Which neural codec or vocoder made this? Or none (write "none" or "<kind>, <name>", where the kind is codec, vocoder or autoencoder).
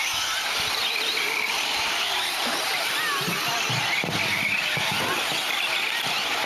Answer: none